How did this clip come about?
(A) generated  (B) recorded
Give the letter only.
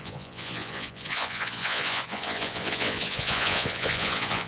A